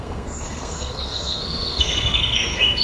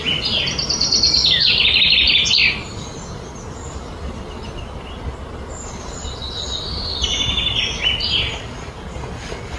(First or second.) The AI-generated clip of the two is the first